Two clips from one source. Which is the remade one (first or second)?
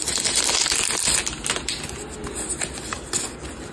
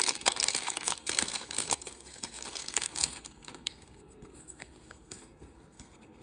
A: second